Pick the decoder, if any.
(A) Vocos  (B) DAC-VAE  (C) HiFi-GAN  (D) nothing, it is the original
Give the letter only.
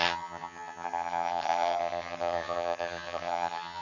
C